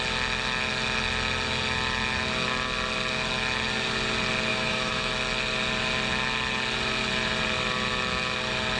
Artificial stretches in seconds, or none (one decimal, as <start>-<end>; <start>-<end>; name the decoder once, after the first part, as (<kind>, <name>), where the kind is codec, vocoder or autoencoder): 4.5-5.1 (autoencoder, DAC-VAE)